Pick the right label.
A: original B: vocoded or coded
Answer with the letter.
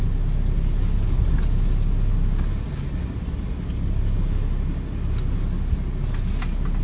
A